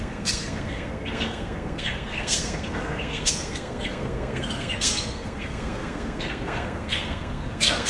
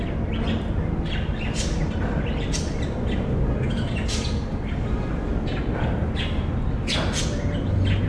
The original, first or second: second